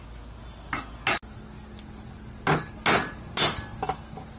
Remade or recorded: recorded